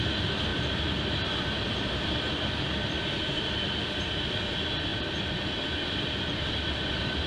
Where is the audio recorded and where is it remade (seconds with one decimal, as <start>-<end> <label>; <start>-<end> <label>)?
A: 0.0-0.5 recorded; 0.5-3.0 remade; 3.0-7.3 recorded